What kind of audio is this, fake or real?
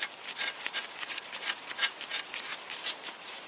real